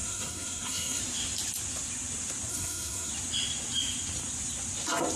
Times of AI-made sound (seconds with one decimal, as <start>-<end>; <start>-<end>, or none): 0.0-1.0; 2.5-3.1